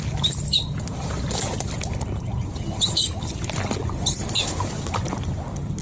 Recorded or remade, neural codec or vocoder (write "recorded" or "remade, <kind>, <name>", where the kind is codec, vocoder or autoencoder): recorded